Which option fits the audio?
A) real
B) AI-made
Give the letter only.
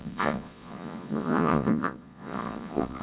B